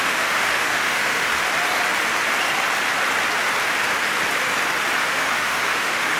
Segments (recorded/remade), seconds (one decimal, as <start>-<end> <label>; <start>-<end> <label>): 0.0-1.3 remade; 1.3-5.0 recorded; 5.0-6.2 remade